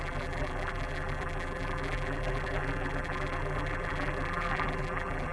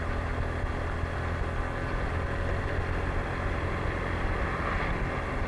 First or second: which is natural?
second